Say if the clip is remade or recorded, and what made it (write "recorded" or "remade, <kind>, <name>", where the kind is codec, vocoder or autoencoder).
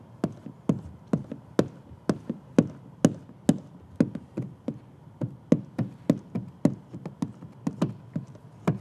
recorded